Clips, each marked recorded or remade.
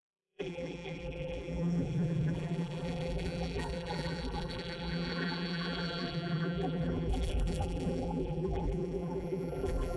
remade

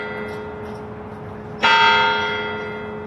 recorded